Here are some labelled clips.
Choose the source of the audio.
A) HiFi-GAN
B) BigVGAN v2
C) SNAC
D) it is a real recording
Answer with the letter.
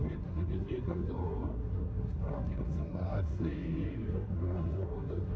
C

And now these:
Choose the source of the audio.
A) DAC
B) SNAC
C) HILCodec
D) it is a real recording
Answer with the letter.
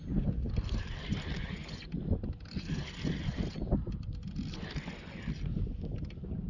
D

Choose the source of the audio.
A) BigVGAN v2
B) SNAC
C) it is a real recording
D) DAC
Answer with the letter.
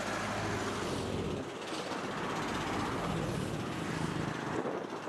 C